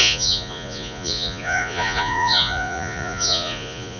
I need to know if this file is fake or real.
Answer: fake